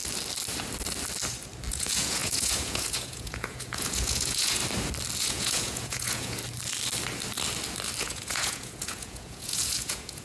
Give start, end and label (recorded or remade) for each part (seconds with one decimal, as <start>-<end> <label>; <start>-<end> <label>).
0.0-1.7 recorded; 1.7-4.6 remade; 4.6-5.2 recorded; 5.2-6.4 remade; 6.4-8.0 recorded; 8.0-10.2 remade